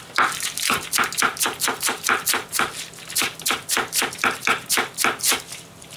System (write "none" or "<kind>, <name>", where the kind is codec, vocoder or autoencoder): none